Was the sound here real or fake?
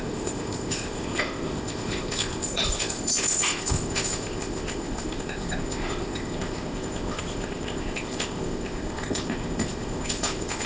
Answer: fake